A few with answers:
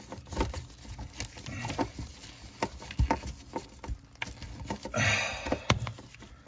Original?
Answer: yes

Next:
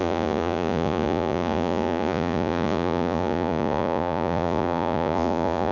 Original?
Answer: no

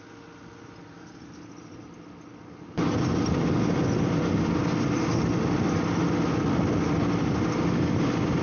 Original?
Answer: yes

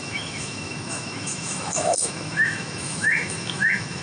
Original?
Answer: no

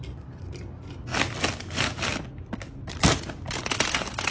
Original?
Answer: yes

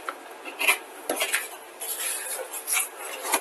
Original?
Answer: yes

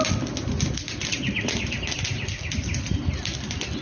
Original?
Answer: yes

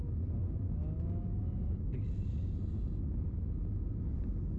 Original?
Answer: yes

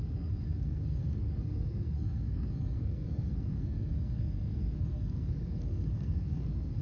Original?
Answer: no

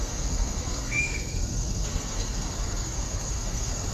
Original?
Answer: no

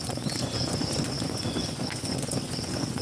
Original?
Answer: no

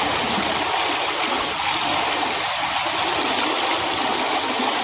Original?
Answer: yes